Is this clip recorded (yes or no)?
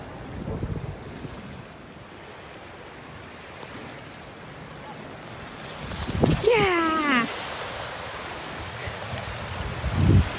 yes